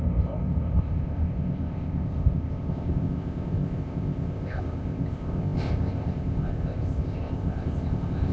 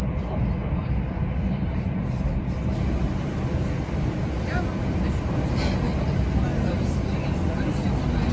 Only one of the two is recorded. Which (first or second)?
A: second